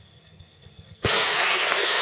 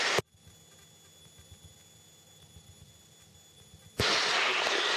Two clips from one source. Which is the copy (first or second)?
first